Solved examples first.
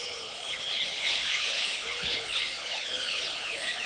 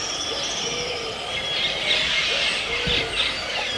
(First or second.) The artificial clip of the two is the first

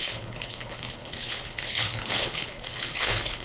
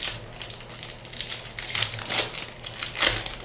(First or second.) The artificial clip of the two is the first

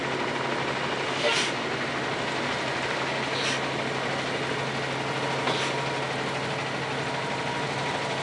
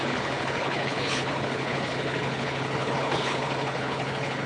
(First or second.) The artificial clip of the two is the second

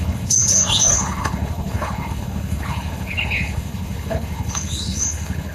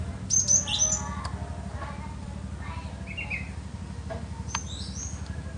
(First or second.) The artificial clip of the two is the first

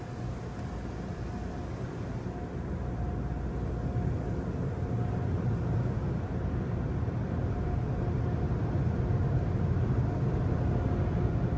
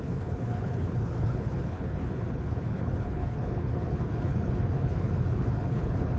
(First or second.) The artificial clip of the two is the second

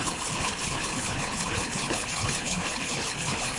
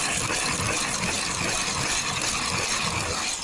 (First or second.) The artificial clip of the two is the first